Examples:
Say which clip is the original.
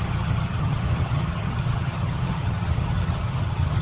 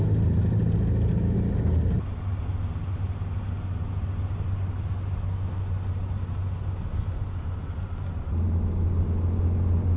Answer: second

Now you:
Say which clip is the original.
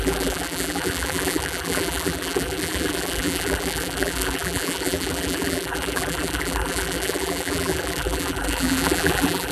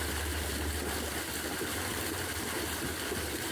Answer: second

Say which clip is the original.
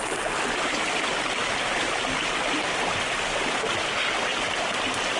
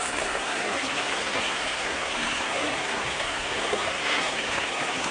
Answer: first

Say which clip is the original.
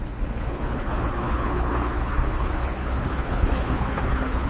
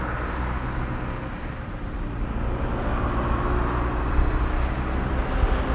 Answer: second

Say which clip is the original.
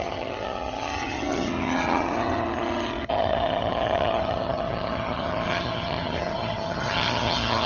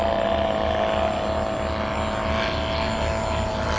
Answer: second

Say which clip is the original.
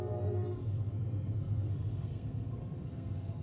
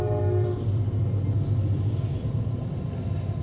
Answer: second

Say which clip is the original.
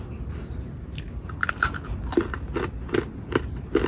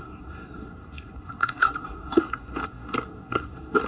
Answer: first